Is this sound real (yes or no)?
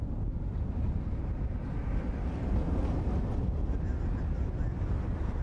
yes